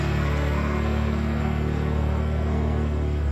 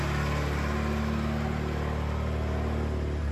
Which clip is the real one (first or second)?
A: second